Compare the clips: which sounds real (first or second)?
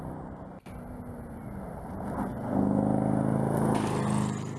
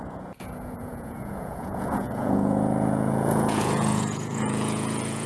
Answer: first